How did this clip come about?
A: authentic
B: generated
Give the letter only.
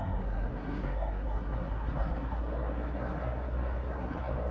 B